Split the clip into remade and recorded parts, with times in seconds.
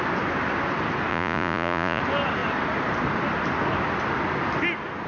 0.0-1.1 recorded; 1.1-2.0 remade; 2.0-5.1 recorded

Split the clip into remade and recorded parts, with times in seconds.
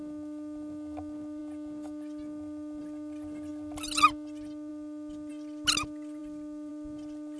0.0-7.4 recorded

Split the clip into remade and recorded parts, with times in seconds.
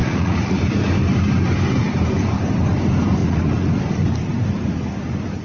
0.0-0.6 remade; 0.6-3.2 recorded; 3.2-3.8 remade; 3.8-5.4 recorded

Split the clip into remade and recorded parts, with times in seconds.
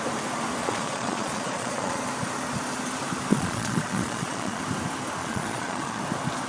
0.0-0.6 recorded; 0.6-2.0 remade; 2.0-3.3 recorded; 3.3-4.6 remade; 4.6-5.2 recorded; 5.2-6.0 remade; 6.0-6.5 recorded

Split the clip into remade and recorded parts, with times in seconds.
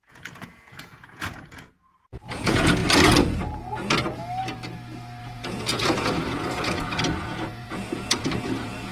0.0-2.8 remade; 2.8-5.2 recorded; 5.2-8.9 remade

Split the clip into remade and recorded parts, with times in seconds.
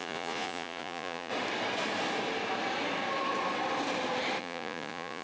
0.0-1.3 remade; 1.3-4.4 recorded; 4.4-5.2 remade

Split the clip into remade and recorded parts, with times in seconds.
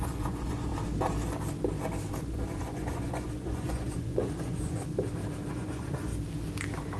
0.0-0.7 remade; 0.7-2.2 recorded; 2.2-4.9 remade; 4.9-5.5 recorded; 5.5-6.1 remade; 6.1-7.0 recorded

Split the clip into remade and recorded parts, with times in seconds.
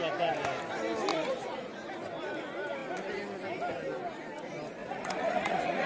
0.0-1.1 recorded; 1.1-1.9 remade; 1.9-4.8 recorded; 4.8-5.9 remade